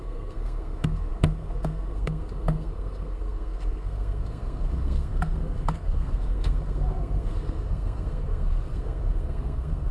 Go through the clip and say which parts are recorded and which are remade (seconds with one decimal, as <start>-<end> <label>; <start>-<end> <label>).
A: 0.0-9.9 remade